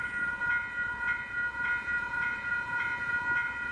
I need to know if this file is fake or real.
fake